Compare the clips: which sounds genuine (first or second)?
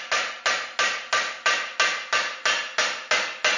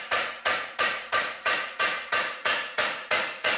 first